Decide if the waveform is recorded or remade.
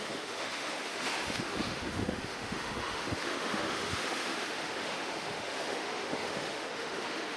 remade